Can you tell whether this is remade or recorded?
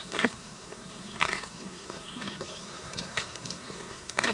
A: remade